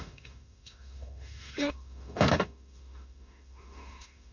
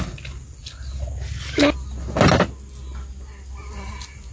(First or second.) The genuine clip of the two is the second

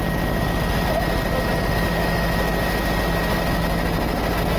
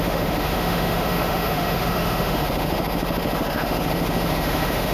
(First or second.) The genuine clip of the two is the first